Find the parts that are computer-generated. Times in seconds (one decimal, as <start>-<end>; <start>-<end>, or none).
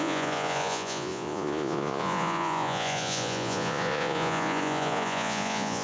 0.0-5.8